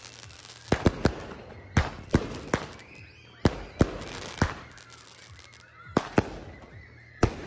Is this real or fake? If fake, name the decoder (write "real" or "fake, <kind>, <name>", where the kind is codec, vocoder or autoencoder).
real